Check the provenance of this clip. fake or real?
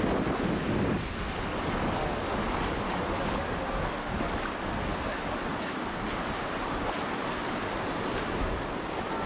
real